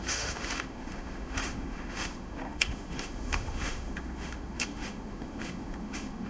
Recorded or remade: remade